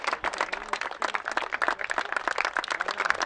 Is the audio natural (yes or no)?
yes